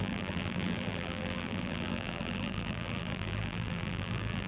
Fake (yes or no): yes